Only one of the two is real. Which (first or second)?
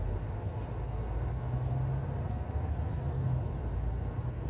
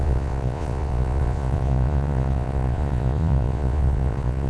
first